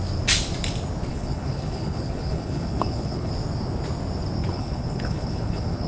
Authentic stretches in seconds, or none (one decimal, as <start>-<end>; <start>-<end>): 0.0-1.1; 3.3-4.4